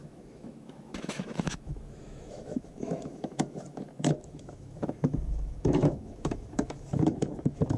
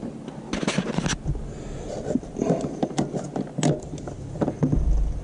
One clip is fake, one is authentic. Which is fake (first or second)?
first